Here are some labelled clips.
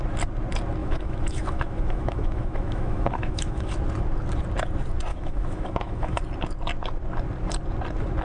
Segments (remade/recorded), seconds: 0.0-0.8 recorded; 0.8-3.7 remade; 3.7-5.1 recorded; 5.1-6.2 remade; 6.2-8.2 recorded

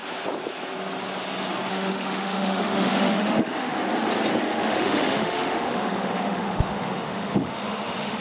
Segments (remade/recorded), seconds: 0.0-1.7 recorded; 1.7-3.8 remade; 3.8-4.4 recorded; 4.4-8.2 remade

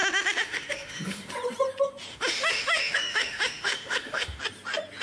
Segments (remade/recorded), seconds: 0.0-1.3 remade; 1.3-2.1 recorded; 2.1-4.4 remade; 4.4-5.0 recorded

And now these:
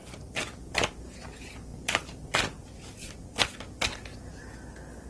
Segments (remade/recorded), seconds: 0.0-5.1 recorded